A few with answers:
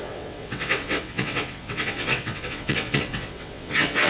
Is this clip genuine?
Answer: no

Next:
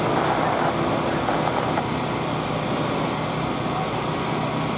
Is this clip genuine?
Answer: yes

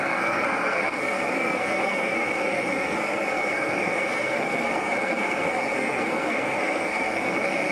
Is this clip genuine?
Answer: no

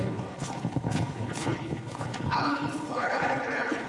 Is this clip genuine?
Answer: no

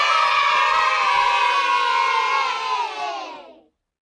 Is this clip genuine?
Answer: yes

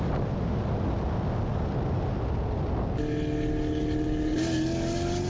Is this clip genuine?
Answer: yes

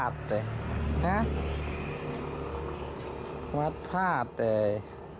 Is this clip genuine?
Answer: yes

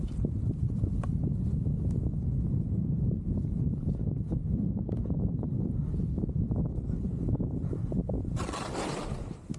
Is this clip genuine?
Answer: yes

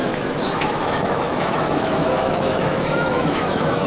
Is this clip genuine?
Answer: no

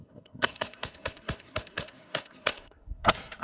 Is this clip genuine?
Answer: no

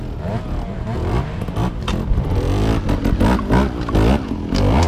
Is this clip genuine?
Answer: yes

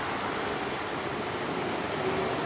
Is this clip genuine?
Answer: yes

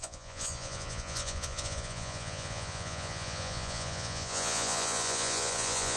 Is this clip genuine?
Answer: no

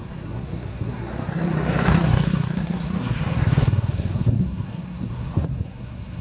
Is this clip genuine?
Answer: no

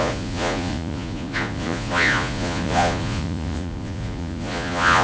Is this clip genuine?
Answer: no